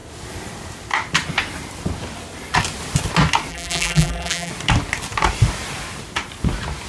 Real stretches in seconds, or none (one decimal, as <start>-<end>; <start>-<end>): 0.0-3.5; 4.5-6.9